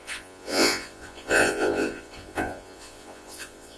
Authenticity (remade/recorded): remade